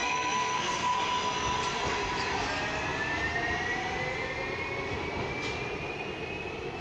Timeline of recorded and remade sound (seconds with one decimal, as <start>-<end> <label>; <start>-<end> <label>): 0.0-1.0 remade; 1.0-6.8 recorded